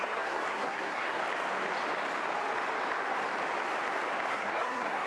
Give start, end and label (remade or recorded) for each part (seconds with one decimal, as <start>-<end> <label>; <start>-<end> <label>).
0.0-1.2 remade; 1.2-4.3 recorded; 4.3-5.1 remade